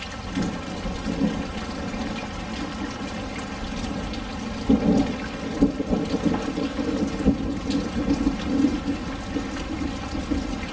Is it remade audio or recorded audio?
recorded